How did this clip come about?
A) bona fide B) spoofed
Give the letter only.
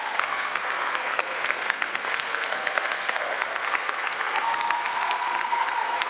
B